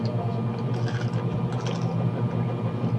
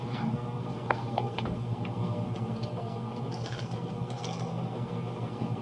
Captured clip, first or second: first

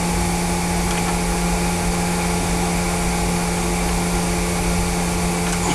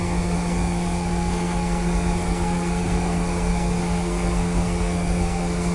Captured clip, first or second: first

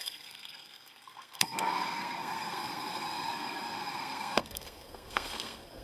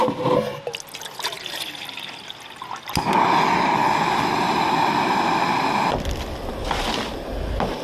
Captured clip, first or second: second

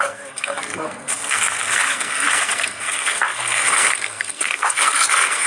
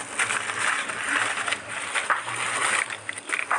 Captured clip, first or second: second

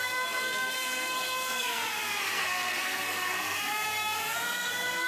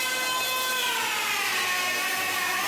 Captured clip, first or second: second